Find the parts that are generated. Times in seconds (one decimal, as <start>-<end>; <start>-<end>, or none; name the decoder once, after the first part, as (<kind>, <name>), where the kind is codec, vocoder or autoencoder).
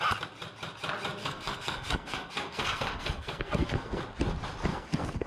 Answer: 1.2-4.0 (codec, SNAC); 4.7-5.3